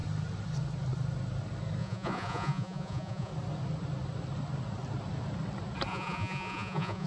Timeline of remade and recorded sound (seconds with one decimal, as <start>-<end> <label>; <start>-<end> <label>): 0.0-1.8 recorded; 1.8-3.3 remade; 3.3-5.9 recorded; 5.9-7.1 remade